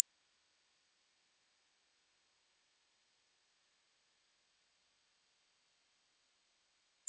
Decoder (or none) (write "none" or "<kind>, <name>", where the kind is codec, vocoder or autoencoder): none